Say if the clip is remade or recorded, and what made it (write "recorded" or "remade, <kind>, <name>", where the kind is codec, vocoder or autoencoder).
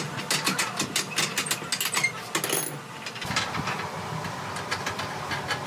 recorded